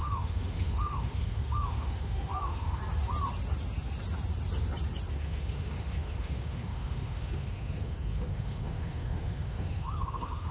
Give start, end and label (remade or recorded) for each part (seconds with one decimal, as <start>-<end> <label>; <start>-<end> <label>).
0.0-2.8 remade; 2.8-5.1 recorded; 5.1-10.5 remade